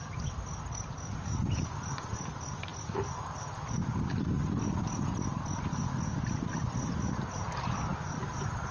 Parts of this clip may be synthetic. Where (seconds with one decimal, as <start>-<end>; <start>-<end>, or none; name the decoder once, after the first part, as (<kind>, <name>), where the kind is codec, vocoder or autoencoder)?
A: none